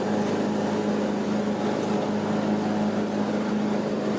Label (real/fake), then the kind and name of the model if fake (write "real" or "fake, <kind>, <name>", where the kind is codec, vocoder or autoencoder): real